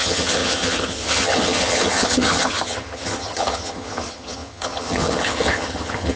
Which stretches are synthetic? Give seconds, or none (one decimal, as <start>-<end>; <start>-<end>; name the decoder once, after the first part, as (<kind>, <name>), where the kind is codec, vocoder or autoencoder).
0.0-6.2 (vocoder, HiFi-GAN)